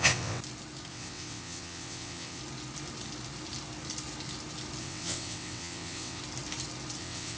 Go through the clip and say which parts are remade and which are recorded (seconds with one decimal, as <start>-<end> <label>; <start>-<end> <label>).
0.0-0.4 remade; 0.4-0.9 recorded; 0.9-2.4 remade; 2.4-4.8 recorded; 4.8-6.2 remade; 6.2-7.0 recorded; 7.0-7.4 remade